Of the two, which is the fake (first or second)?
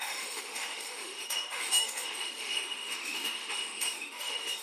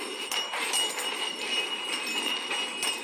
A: first